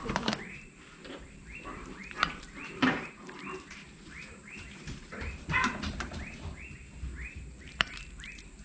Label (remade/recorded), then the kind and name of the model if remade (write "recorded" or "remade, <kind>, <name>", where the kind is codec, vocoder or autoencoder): remade, vocoder, BigVGAN v2